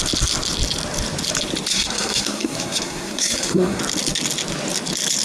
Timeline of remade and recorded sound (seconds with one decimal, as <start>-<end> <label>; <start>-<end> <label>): 0.0-1.7 recorded; 1.7-3.8 remade; 3.8-5.2 recorded

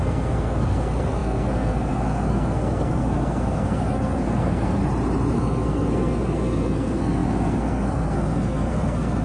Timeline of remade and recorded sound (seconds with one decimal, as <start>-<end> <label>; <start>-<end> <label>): 0.0-4.8 remade; 4.8-5.3 recorded; 5.3-9.2 remade